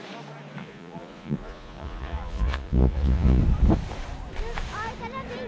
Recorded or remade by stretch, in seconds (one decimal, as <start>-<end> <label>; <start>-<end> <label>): 0.0-0.6 recorded; 0.6-3.4 remade; 3.4-5.5 recorded